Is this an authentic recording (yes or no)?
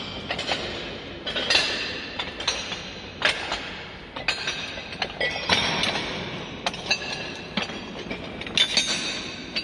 yes